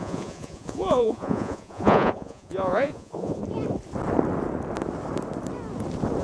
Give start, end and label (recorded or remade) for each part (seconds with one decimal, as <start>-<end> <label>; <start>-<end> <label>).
0.0-3.4 remade; 3.4-6.2 recorded

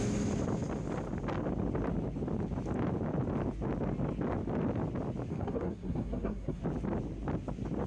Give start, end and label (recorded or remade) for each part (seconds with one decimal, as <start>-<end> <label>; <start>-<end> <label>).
0.0-5.3 recorded; 5.3-6.6 remade; 6.6-7.9 recorded

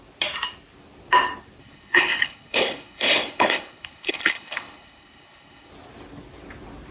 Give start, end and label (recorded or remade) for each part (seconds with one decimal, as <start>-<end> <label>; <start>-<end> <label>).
0.0-1.6 recorded; 1.6-5.7 remade; 5.7-6.9 recorded

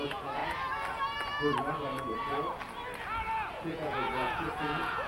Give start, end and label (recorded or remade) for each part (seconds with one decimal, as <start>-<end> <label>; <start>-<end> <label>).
0.0-0.4 remade; 0.4-3.5 recorded; 3.5-5.1 remade

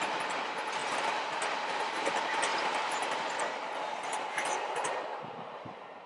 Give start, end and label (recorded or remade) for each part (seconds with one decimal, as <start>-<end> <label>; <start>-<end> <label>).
0.0-0.8 recorded; 0.8-1.9 remade; 1.9-2.5 recorded; 2.5-3.4 remade; 3.4-5.1 recorded; 5.1-6.1 remade

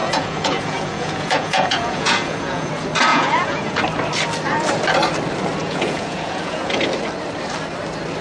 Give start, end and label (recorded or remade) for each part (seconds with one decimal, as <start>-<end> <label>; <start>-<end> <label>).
0.0-2.7 remade; 2.7-3.1 recorded; 3.1-3.8 remade; 3.8-5.6 recorded; 5.6-6.8 remade; 6.8-8.2 recorded